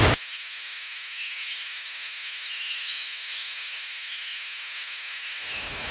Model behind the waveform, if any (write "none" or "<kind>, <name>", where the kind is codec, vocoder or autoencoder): autoencoder, DAC-VAE